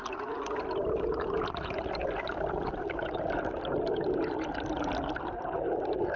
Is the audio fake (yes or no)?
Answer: no